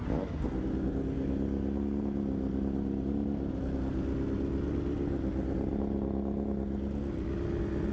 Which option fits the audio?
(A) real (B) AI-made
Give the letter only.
A